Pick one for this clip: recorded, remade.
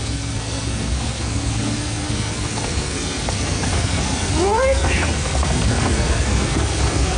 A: remade